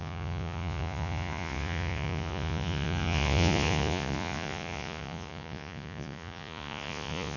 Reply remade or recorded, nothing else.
remade